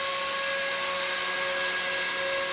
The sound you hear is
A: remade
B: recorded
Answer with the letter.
B